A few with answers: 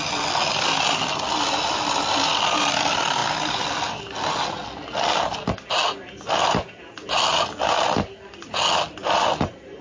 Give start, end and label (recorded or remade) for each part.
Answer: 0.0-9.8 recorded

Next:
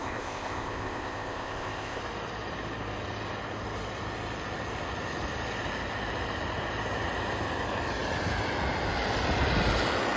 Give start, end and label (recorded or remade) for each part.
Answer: 0.0-2.0 remade; 2.0-10.2 recorded

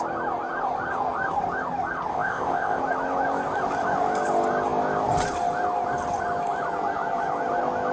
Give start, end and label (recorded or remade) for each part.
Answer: 0.0-2.1 recorded; 2.1-2.8 remade; 2.8-7.9 recorded